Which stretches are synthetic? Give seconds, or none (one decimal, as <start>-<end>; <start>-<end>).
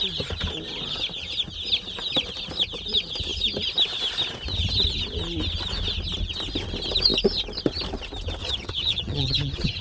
8.4-9.8